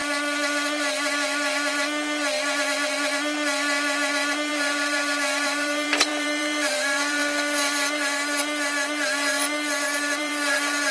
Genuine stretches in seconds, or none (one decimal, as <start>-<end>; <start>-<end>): 0.0-4.5; 7.2-10.2